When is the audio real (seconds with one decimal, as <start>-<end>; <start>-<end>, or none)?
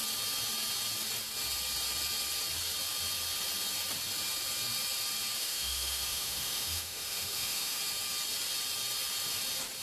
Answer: 0.0-5.4; 7.8-9.8